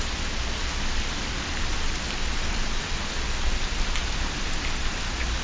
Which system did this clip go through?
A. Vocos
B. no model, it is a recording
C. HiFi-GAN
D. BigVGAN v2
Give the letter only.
B